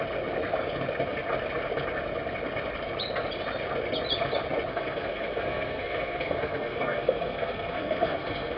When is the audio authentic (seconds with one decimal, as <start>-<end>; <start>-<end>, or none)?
0.0-4.7